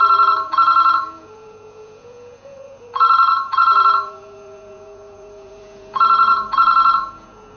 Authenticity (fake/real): fake